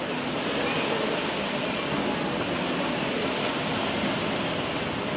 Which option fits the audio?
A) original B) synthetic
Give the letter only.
A